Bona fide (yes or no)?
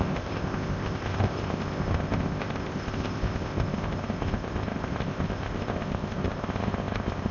no